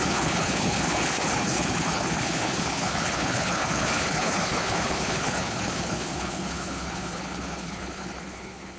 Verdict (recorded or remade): remade